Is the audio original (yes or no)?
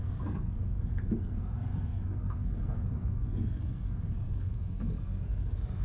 no